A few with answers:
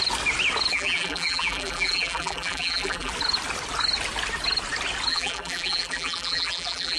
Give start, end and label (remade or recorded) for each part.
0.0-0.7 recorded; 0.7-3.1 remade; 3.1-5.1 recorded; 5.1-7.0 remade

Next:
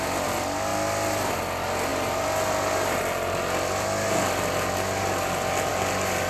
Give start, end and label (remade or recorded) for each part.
0.0-6.3 recorded

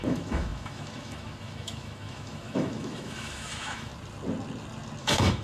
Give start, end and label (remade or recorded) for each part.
0.0-3.9 remade; 3.9-5.0 recorded; 5.0-5.4 remade

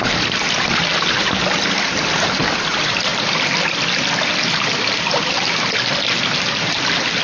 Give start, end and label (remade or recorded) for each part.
0.0-7.2 recorded

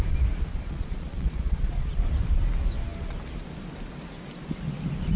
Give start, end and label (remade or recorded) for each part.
0.0-0.5 recorded; 0.5-2.0 remade; 2.0-5.2 recorded

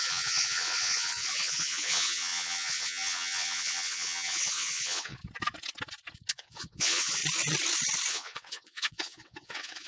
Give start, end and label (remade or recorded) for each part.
0.0-5.2 remade; 5.2-6.3 recorded; 6.3-7.2 remade; 7.2-8.1 recorded; 8.1-9.9 remade

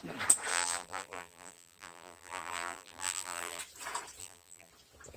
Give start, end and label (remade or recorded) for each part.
0.0-0.5 recorded; 0.5-3.6 remade; 3.6-4.2 recorded; 4.2-4.7 remade; 4.7-5.2 recorded